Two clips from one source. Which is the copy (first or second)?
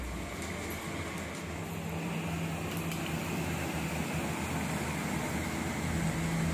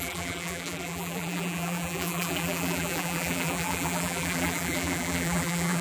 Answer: second